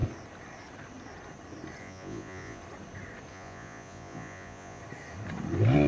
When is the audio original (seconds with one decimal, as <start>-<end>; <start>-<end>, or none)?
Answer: 0.0-1.8; 2.6-3.3; 4.8-5.9